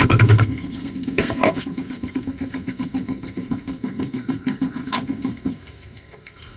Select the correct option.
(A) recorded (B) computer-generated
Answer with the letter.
B